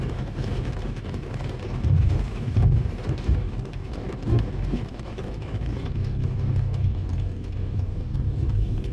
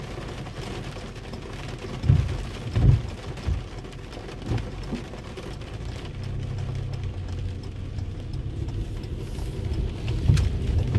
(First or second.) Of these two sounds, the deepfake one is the first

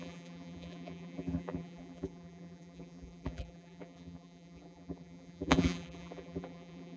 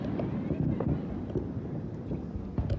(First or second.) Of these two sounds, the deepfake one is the first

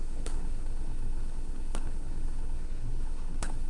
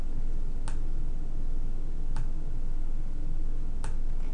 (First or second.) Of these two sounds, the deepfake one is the first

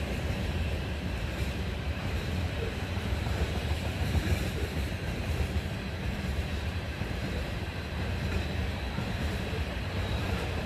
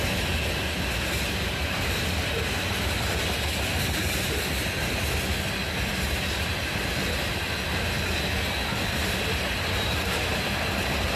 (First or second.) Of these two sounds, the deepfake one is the first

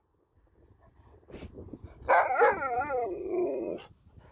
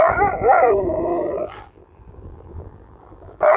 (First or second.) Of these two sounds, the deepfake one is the second